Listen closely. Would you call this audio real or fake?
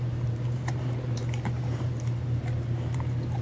fake